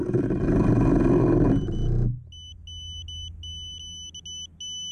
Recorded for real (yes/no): yes